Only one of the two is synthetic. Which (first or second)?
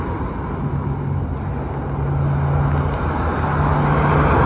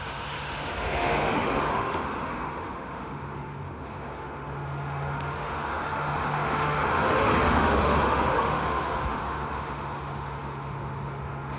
second